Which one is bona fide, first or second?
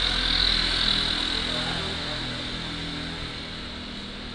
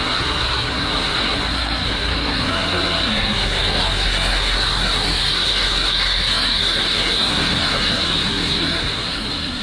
first